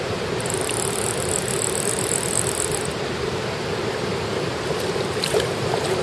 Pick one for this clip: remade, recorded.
recorded